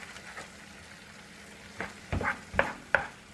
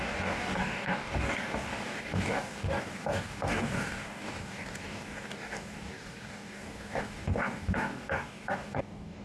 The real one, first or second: first